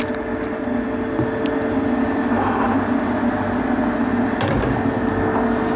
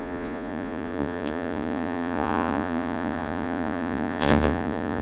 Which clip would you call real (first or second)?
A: first